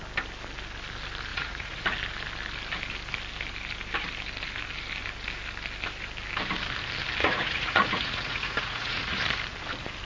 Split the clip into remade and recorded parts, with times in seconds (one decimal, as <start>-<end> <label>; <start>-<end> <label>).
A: 0.0-1.3 recorded; 1.3-1.8 remade; 1.8-7.2 recorded; 7.2-9.2 remade; 9.2-10.0 recorded